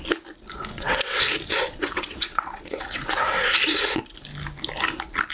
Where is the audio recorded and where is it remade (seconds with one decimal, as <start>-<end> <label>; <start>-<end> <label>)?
0.0-0.7 recorded; 0.7-1.2 remade; 1.2-1.7 recorded; 1.7-3.1 remade; 3.1-5.3 recorded

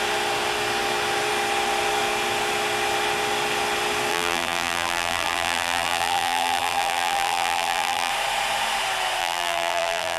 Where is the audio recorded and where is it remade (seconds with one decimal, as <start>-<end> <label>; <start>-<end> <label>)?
0.0-4.1 recorded; 4.1-8.1 remade; 8.1-9.2 recorded; 9.2-10.2 remade

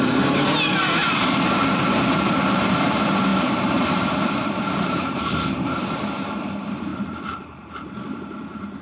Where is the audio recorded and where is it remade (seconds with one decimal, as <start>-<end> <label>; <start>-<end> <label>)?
0.0-8.8 remade

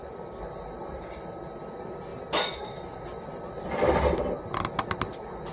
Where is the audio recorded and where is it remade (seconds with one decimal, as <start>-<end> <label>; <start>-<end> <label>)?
0.0-5.5 recorded

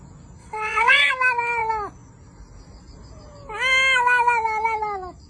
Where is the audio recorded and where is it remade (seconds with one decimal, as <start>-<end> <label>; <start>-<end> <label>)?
0.0-0.4 recorded; 0.4-1.1 remade; 1.1-5.3 recorded

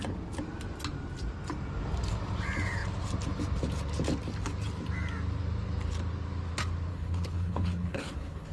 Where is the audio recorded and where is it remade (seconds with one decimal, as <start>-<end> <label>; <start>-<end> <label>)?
0.0-6.9 recorded; 6.9-8.5 remade